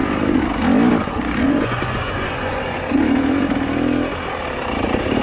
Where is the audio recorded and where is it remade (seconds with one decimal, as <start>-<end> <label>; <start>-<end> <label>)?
0.0-1.0 recorded; 1.0-3.0 remade; 3.0-5.2 recorded